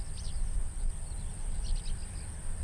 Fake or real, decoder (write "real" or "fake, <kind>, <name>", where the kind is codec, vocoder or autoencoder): real